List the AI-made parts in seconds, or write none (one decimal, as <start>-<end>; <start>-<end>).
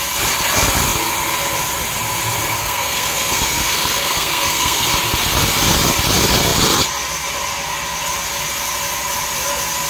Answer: 2.6-4.9